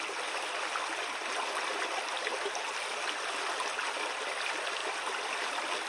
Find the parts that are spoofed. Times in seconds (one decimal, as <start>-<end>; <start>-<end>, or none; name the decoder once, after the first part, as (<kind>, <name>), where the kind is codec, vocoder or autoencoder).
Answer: 4.8-5.9 (vocoder, BigVGAN v2)